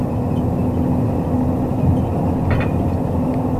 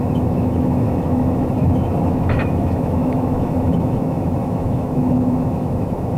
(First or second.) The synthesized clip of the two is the second